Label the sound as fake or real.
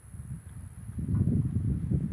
real